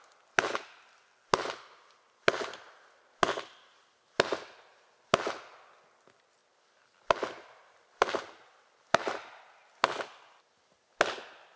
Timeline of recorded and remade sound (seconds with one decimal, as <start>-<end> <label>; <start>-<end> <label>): 0.0-11.6 recorded